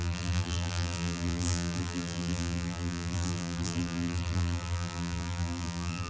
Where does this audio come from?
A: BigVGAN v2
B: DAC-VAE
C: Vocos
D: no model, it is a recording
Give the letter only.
A